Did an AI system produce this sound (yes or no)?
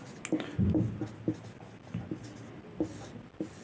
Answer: no